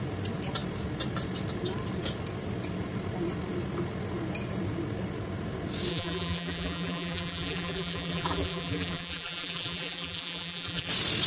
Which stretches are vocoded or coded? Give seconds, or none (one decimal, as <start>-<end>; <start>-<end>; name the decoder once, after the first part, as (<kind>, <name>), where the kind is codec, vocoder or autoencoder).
5.9-10.9 (vocoder, BigVGAN v2)